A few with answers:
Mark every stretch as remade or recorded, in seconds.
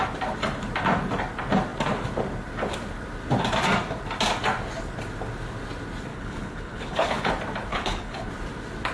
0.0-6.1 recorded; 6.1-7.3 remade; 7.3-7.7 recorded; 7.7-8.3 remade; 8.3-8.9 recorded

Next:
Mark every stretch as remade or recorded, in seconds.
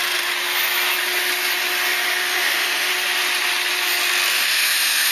0.0-2.3 recorded; 2.3-2.9 remade; 2.9-4.3 recorded; 4.3-5.1 remade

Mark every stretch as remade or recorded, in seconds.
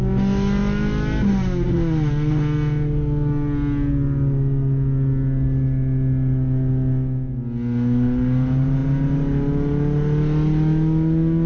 0.0-11.5 recorded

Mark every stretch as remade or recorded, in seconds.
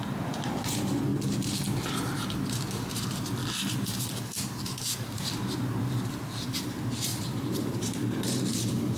0.0-7.1 recorded; 7.1-8.2 remade; 8.2-9.0 recorded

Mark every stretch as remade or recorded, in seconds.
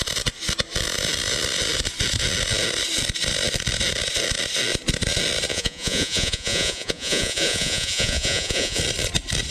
0.0-5.5 recorded; 5.5-8.8 remade; 8.8-9.5 recorded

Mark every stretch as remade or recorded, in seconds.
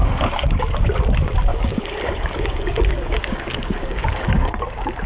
0.0-0.6 remade; 0.6-1.5 recorded; 1.5-4.6 remade; 4.6-5.1 recorded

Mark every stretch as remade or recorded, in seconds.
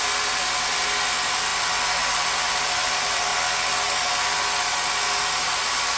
0.0-3.3 remade; 3.3-6.0 recorded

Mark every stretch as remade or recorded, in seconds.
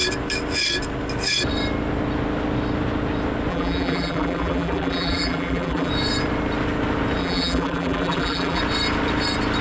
0.0-3.5 recorded; 3.5-5.9 remade; 5.9-7.2 recorded; 7.2-8.6 remade; 8.6-9.6 recorded